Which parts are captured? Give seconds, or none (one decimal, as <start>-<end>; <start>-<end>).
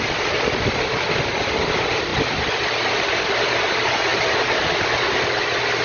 0.0-5.8